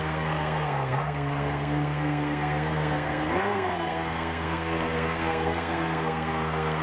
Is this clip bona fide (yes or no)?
no